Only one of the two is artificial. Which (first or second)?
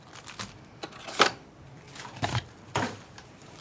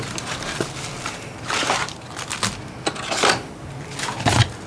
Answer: first